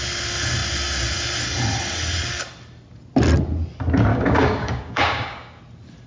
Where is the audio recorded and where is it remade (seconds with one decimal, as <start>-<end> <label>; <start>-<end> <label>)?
0.0-4.1 recorded; 4.1-5.6 remade; 5.6-6.1 recorded